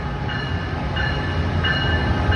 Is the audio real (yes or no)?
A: yes